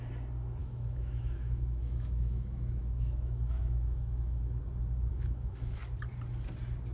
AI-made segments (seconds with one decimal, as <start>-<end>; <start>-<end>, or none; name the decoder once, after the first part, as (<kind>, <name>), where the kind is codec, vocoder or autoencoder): 0.6-4.6 (autoencoder, DAC-VAE); 5.1-5.8